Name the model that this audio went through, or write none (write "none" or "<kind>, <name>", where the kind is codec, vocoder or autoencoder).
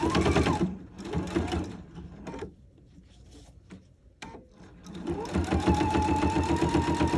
vocoder, BigVGAN v2